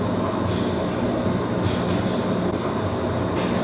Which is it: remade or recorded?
recorded